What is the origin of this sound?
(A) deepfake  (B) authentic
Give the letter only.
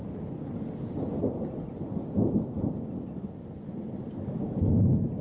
B